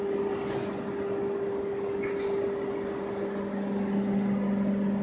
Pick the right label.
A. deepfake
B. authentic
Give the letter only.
B